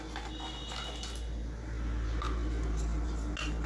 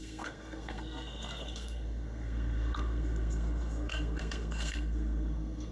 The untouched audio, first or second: first